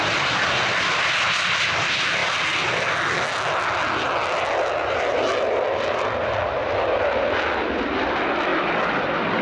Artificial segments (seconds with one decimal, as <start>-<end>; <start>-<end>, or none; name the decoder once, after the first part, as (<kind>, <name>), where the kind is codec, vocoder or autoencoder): none